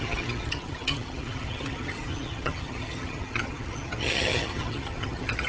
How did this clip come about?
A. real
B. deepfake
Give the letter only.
B